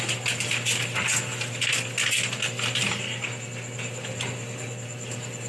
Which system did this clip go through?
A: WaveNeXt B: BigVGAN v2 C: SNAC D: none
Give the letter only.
D